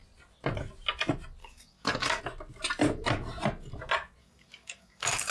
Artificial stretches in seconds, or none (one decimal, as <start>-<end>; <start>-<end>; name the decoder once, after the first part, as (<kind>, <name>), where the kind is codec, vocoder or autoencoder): 1.4-2.2 (codec, DAC); 4.2-5.3